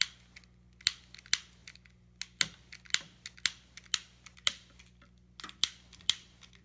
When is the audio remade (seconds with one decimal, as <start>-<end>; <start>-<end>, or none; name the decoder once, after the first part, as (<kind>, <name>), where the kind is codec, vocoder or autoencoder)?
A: none